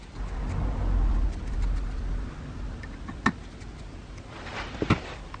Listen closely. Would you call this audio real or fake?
real